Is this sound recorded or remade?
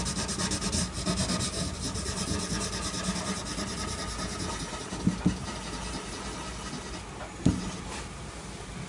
recorded